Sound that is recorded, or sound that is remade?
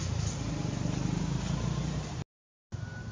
recorded